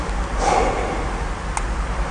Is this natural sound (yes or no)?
yes